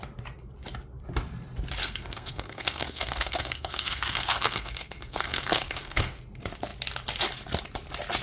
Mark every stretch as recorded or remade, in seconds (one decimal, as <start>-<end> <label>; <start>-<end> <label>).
0.0-1.8 recorded; 1.8-6.2 remade; 6.2-8.2 recorded